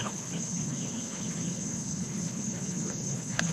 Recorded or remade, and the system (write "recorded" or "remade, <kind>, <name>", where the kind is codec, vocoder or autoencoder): remade, codec, HILCodec